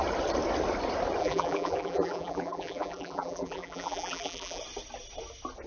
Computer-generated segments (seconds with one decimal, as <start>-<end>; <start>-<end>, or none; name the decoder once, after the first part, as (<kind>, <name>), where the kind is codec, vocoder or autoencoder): 1.2-4.6 (vocoder, BigVGAN v2)